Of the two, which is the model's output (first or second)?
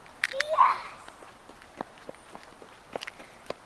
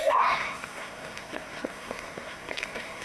second